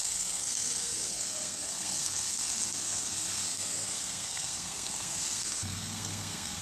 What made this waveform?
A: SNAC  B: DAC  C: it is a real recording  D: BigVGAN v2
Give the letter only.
A